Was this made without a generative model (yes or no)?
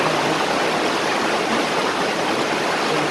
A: yes